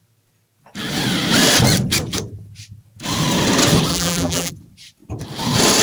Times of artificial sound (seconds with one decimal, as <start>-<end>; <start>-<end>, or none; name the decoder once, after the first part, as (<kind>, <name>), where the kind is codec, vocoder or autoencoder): 3.9-4.5 (vocoder, BigVGAN v2)